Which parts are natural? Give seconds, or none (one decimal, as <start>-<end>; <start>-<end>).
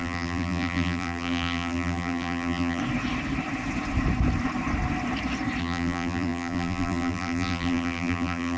2.8-5.6